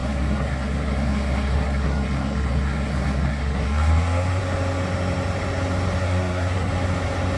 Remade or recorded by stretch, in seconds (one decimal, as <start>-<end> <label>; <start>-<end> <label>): 0.0-4.4 remade; 4.4-6.0 recorded; 6.0-6.7 remade; 6.7-7.4 recorded